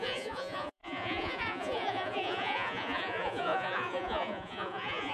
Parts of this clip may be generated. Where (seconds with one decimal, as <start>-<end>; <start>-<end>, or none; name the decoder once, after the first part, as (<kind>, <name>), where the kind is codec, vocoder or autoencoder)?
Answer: 0.0-5.1 (vocoder, Vocos)